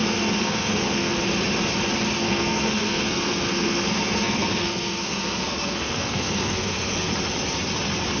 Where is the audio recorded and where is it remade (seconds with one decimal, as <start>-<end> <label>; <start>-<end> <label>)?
0.0-1.2 remade; 1.2-2.2 recorded; 2.2-7.1 remade; 7.1-8.2 recorded